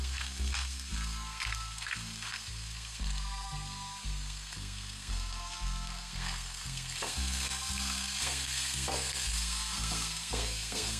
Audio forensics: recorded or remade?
remade